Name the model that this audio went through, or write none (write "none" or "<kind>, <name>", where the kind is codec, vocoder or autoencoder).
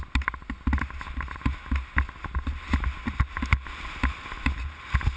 none